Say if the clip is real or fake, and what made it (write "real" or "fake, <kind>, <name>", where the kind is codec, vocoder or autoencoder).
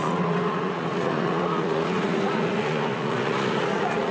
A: fake, vocoder, Vocos